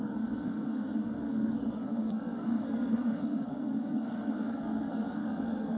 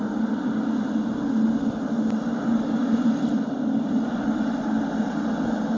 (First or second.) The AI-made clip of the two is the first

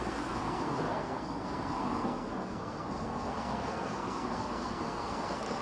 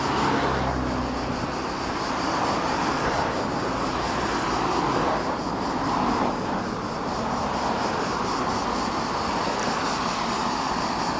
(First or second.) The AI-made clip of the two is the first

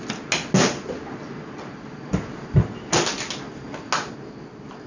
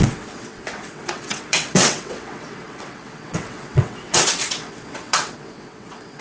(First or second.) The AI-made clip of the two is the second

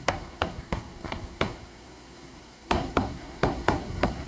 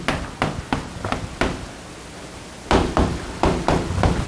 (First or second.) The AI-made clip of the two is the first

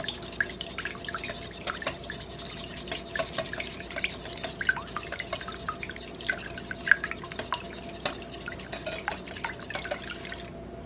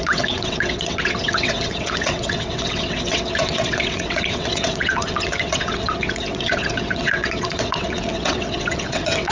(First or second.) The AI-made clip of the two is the second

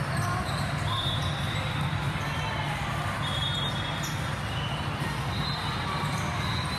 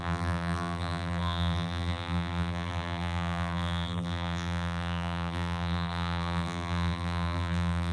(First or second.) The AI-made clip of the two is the second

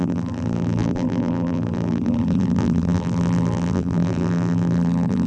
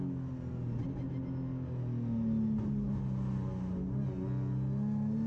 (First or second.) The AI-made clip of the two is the first